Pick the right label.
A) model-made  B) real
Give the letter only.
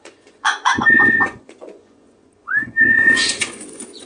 A